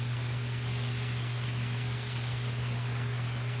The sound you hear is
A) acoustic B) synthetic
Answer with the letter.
B